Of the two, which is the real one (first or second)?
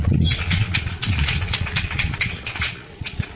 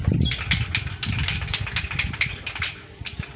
second